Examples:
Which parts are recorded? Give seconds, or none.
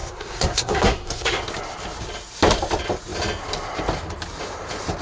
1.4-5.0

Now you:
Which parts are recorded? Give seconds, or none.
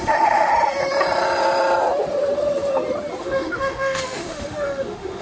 0.5-3.2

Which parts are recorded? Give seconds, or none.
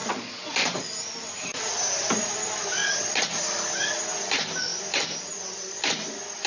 0.8-2.8; 3.3-6.5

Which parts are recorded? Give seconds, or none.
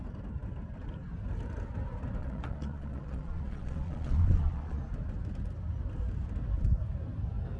0.0-2.2; 4.8-7.6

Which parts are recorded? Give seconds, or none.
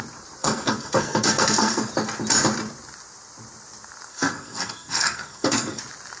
0.0-0.4; 1.9-4.1; 5.8-6.2